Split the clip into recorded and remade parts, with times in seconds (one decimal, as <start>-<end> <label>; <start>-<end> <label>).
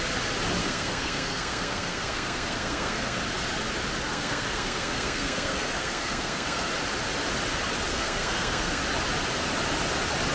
0.0-0.6 recorded; 0.6-3.2 remade; 3.2-4.1 recorded; 4.1-6.7 remade; 6.7-7.9 recorded; 7.9-8.8 remade; 8.8-10.3 recorded